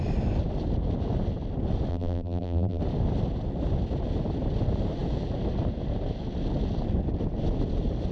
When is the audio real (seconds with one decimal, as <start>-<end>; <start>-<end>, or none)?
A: 0.0-1.9; 2.8-8.1